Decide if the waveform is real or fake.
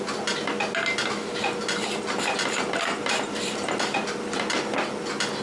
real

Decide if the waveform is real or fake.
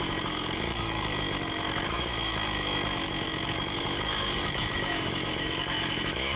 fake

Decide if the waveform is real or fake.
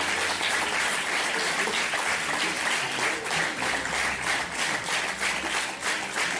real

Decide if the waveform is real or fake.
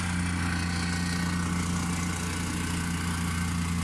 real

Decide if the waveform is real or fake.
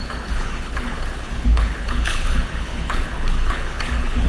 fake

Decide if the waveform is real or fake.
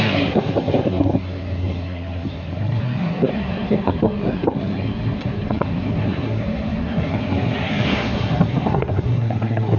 fake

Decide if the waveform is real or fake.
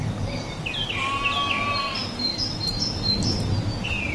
real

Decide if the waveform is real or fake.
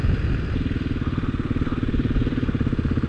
real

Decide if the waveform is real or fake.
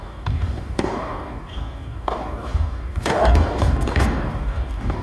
fake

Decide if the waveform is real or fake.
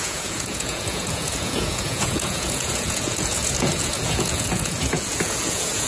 fake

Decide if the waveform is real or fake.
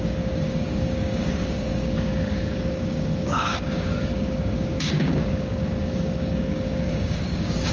fake